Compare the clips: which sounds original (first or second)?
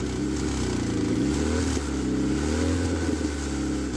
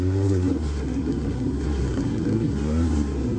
first